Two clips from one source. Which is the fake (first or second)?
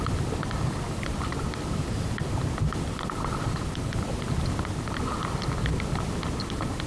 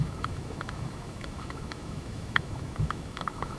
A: second